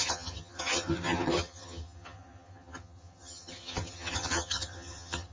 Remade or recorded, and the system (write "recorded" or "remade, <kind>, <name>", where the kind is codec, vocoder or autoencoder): remade, vocoder, HiFi-GAN